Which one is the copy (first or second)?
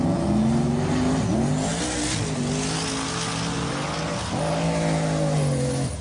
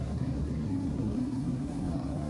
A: second